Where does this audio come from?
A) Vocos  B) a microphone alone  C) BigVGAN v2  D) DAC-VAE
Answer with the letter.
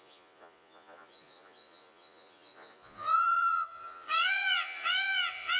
A